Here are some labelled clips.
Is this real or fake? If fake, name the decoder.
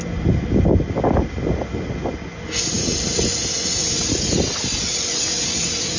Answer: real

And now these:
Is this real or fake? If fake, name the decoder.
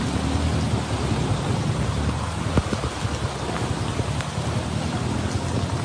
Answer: real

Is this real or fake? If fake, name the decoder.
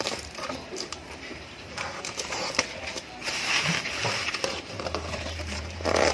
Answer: fake, vocoder, BigVGAN v2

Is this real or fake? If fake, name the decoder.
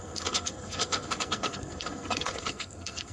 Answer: fake, codec, SNAC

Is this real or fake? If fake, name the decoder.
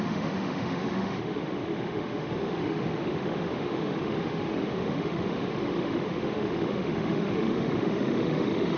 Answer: fake, autoencoder, DAC-VAE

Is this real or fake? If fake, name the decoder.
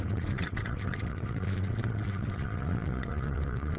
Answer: fake, vocoder, WaveNeXt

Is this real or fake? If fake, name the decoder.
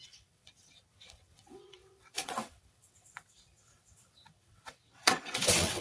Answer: fake, vocoder, WaveNeXt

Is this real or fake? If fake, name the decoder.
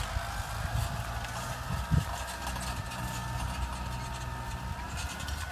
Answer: real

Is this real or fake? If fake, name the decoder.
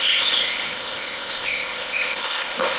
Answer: fake, codec, ZipCodec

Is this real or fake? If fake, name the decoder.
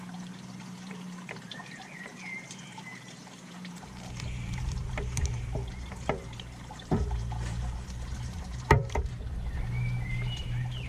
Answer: fake, vocoder, BigVGAN v2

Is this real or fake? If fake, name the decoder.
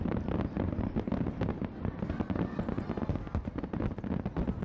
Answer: real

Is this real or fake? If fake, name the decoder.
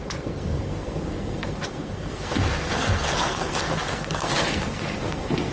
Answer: fake, codec, SNAC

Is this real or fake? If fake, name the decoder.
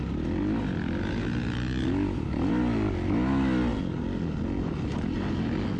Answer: real